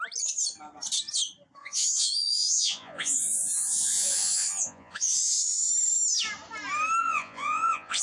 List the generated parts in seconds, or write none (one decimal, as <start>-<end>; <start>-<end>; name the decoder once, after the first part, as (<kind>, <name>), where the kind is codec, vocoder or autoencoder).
1.6-5.7 (vocoder, Vocos); 7.0-8.0